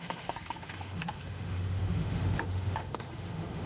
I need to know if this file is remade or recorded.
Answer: remade